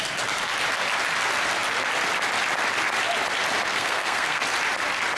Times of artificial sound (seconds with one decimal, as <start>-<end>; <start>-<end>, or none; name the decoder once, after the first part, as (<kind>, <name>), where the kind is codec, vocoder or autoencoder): 3.7-4.4 (codec, SNAC)